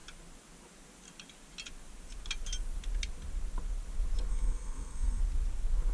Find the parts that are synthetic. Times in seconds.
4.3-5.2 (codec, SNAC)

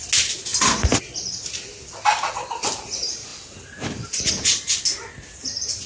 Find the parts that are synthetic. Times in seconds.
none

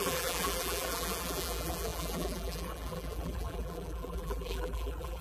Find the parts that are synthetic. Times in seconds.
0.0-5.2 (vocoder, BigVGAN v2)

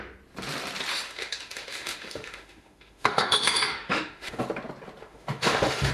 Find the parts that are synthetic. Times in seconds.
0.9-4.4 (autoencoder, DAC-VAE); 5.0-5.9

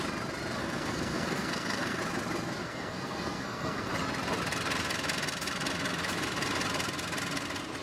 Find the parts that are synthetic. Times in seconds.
0.6-2.0 (codec, SNAC); 2.6-3.9

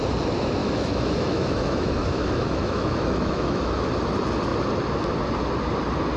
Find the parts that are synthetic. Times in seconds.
0.6-3.9 (autoencoder, DAC-VAE)

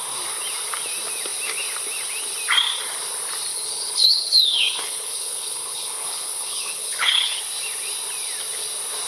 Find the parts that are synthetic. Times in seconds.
3.5-7.4 (codec, HILCodec)

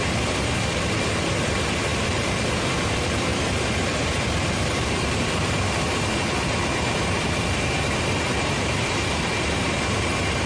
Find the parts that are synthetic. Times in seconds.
0.0-10.5 (vocoder, BigVGAN v2)